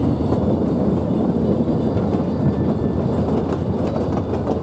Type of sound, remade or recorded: recorded